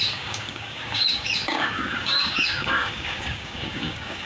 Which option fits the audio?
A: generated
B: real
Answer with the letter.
A